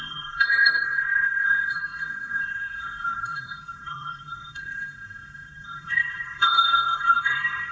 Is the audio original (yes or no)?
no